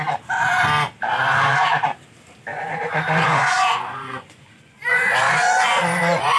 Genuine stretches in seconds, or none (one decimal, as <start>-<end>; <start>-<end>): 0.0-2.5